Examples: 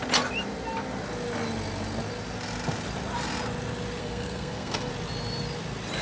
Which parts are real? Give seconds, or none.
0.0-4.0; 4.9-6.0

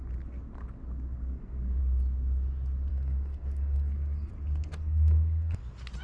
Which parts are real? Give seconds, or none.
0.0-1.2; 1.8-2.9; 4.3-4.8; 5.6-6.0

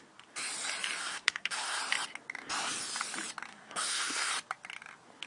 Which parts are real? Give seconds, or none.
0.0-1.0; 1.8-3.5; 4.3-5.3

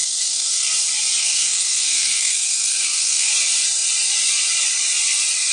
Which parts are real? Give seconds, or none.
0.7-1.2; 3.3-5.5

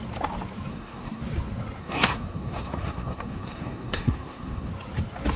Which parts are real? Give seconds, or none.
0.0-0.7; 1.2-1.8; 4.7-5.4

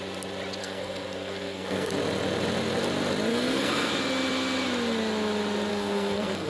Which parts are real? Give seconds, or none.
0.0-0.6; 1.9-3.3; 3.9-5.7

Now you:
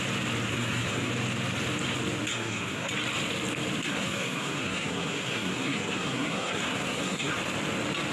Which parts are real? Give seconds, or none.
0.0-0.5; 1.1-2.3; 2.9-3.8; 7.3-8.1

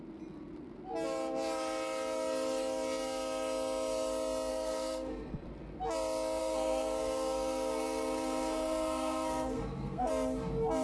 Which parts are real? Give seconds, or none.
0.0-4.5; 5.3-6.4; 10.1-10.8